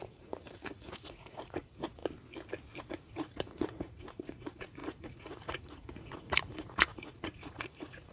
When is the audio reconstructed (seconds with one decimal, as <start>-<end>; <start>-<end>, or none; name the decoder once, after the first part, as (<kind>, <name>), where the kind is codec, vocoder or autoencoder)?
0.0-2.0 (vocoder, Vocos); 2.8-8.1